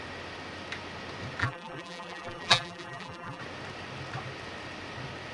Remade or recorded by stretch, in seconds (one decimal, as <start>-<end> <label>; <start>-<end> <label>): 0.0-1.4 recorded; 1.4-3.4 remade; 3.4-5.3 recorded